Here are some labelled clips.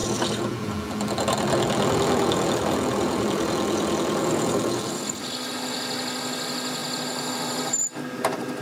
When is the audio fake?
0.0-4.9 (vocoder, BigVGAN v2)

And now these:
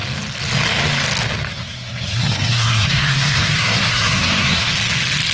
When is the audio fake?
1.5-4.7 (codec, SNAC)

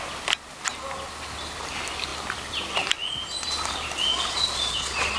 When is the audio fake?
4.1-5.2 (vocoder, Vocos)

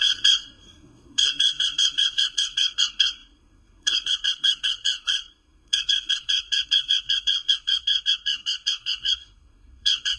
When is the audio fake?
0.0-10.2 (codec, SNAC)

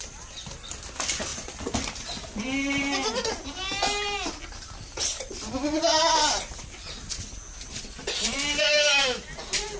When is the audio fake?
8.6-9.2 (autoencoder, DAC-VAE)

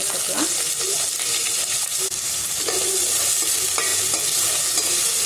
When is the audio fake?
1.4-3.5 (vocoder, BigVGAN v2)